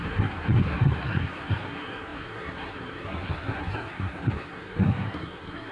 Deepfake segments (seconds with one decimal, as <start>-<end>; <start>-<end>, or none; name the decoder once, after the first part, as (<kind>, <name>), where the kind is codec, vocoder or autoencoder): 0.0-5.7 (codec, SNAC)